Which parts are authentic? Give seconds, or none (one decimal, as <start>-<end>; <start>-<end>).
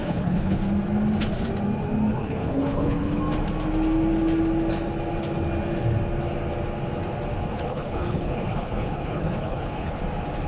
0.6-2.1; 3.2-7.5; 10.0-10.5